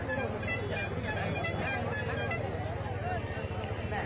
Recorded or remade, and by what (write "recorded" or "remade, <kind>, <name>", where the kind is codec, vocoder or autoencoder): recorded